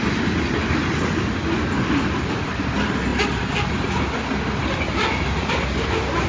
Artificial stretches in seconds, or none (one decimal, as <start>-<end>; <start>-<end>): none